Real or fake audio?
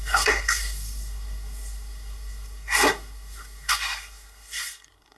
fake